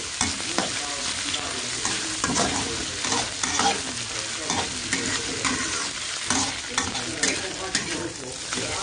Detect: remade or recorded recorded